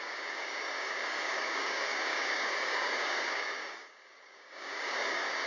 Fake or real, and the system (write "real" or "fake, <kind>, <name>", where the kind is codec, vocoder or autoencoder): fake, codec, DAC